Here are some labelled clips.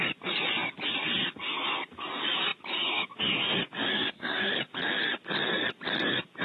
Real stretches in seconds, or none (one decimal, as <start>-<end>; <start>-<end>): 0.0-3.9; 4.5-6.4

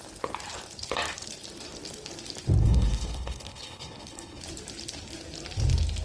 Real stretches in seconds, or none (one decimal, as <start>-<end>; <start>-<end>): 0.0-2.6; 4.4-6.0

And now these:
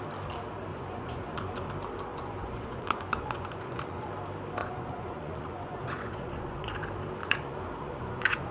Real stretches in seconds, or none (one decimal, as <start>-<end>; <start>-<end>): 0.0-0.7; 1.7-2.1; 4.1-4.6; 6.7-7.2